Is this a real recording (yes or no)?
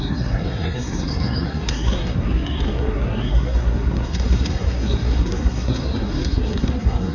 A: no